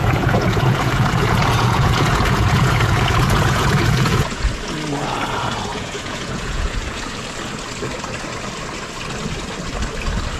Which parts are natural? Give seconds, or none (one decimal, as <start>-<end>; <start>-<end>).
4.5-5.7; 7.0-10.4